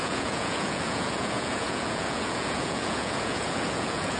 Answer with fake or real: fake